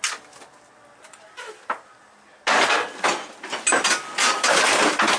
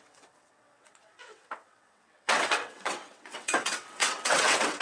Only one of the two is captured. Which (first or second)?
first